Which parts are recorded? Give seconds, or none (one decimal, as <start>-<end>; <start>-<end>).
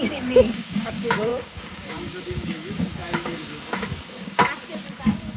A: 4.4-5.0